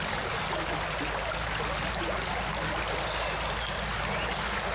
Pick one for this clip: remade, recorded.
recorded